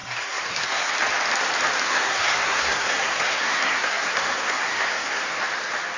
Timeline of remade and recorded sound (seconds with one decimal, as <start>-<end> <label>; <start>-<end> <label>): 0.0-0.9 remade; 0.9-1.8 recorded; 1.8-5.4 remade; 5.4-6.0 recorded